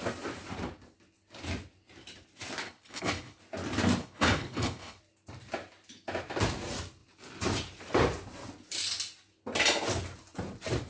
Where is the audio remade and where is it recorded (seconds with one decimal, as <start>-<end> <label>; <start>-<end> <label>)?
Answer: 0.0-2.6 recorded; 2.6-3.4 remade; 3.4-4.0 recorded; 4.0-5.0 remade; 5.0-10.9 recorded